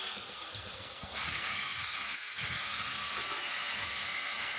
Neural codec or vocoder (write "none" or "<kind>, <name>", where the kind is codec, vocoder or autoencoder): codec, SNAC